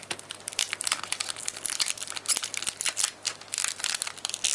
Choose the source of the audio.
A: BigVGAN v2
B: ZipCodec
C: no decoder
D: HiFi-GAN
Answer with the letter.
C